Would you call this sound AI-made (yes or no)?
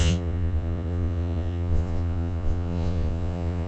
yes